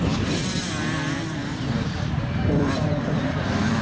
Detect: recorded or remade remade